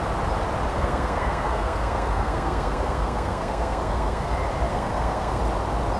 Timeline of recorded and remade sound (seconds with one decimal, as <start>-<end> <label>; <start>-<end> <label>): 0.0-0.7 recorded; 0.7-4.3 remade; 4.3-4.7 recorded; 4.7-5.4 remade; 5.4-6.0 recorded